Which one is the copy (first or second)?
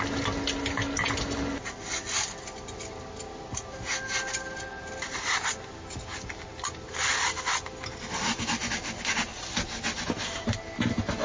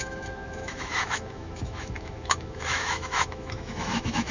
second